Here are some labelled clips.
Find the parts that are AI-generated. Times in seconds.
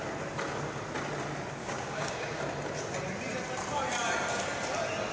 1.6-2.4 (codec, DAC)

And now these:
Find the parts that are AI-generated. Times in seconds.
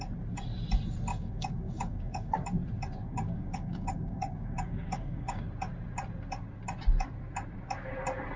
1.1-2.3 (codec, DAC); 3.0-5.4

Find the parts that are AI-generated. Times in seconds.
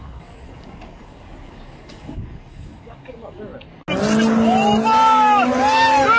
0.0-3.5 (codec, DAC)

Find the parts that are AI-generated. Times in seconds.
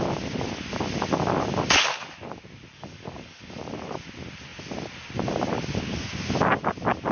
2.7-3.6 (codec, DAC)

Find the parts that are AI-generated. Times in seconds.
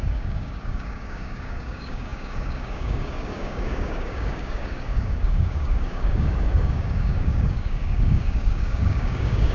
0.0-9.5 (codec, DAC)